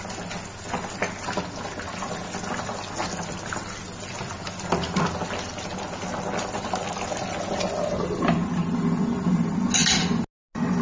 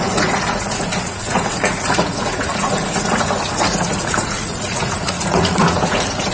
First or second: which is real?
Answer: first